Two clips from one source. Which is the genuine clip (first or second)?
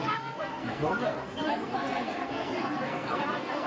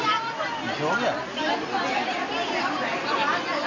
second